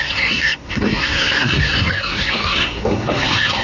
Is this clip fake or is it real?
fake